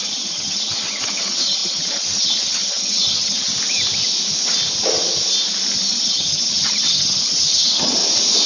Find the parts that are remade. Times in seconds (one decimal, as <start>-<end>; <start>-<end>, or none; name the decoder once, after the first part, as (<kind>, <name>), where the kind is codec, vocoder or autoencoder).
0.0-3.5 (vocoder, HiFi-GAN); 5.9-8.0